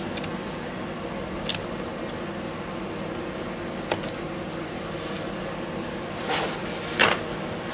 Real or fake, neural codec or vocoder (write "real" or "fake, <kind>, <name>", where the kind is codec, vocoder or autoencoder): real